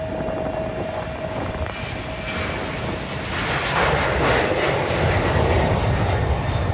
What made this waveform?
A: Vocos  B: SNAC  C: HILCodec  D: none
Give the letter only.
D